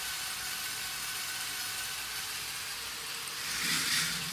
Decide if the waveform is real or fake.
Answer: real